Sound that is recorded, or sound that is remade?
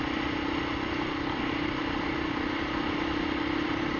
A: recorded